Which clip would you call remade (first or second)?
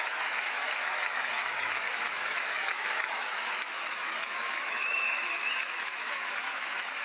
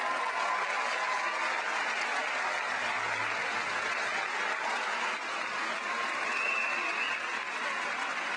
first